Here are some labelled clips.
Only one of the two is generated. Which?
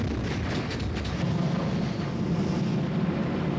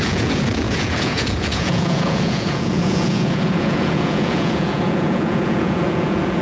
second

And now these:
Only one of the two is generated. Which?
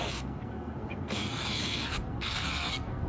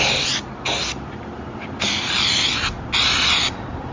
first